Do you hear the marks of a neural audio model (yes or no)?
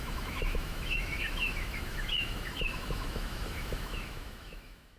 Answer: yes